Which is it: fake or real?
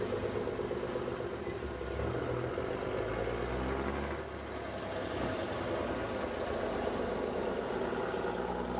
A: real